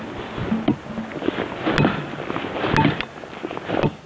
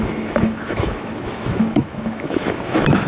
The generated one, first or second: second